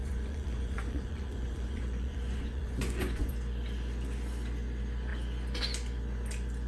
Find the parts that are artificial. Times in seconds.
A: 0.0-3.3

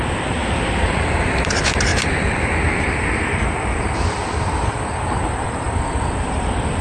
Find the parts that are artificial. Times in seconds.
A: 0.4-1.5; 1.9-6.0

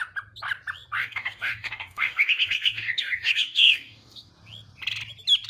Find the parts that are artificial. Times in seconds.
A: 1.0-4.3

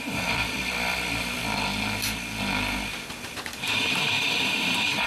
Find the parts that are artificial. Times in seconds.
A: 0.0-1.4; 3.3-5.1

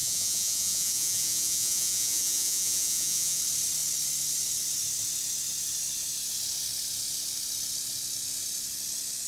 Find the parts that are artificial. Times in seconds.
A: 0.0-3.4

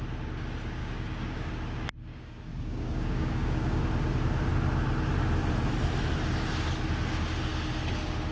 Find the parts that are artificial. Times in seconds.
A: 0.8-1.5; 2.1-3.8